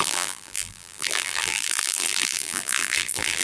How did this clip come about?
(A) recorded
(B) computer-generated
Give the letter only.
B